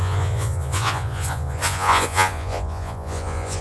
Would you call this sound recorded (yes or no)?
no